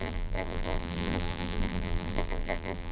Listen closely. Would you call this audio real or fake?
fake